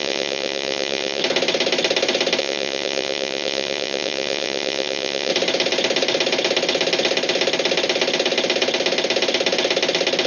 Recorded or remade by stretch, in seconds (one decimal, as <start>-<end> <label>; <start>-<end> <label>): 0.0-1.2 remade; 1.2-2.4 recorded; 2.4-5.3 remade; 5.3-10.3 recorded